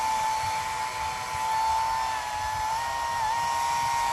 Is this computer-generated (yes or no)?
no